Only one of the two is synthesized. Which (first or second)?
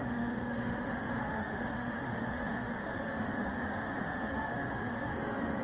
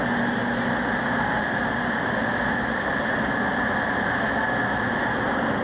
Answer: first